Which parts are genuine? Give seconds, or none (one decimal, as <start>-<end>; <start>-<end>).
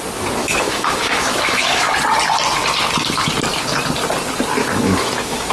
0.0-0.4; 1.9-4.6